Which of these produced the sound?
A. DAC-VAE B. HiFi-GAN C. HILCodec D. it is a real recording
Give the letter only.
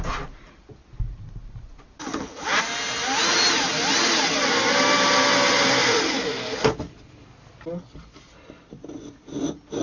D